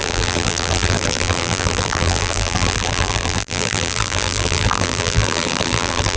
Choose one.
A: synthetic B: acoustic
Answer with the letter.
A